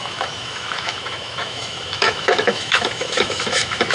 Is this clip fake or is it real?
fake